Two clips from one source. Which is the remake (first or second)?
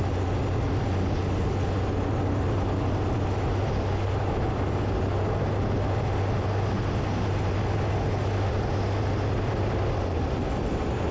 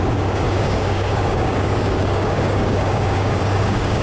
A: second